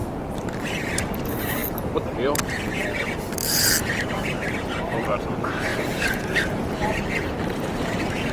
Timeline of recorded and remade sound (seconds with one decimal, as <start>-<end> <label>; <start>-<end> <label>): 0.0-8.3 remade